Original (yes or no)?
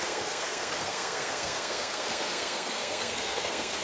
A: no